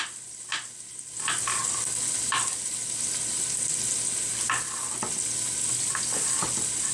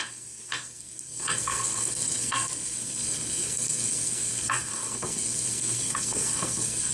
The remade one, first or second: second